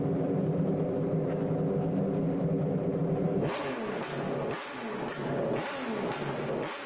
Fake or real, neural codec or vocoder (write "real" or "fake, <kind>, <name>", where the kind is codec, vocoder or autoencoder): real